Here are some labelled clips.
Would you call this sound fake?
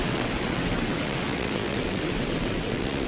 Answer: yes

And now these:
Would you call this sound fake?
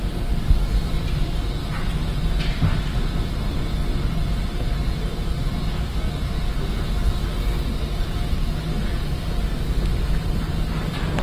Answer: no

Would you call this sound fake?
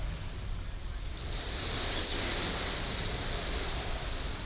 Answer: no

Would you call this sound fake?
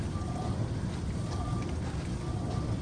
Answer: no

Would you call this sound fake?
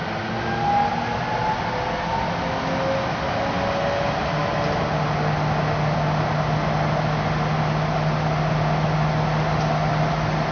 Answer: no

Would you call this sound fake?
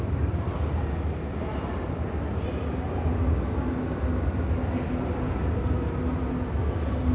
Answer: no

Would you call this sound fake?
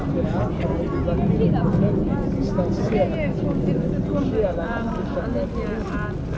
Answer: no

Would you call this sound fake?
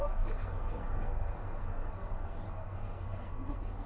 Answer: yes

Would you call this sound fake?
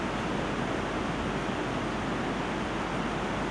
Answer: no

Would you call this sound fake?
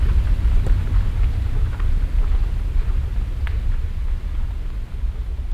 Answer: no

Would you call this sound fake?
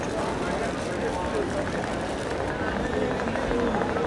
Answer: no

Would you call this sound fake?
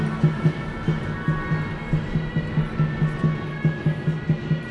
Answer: no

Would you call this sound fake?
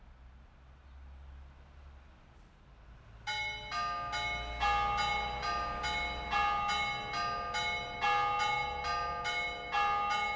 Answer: no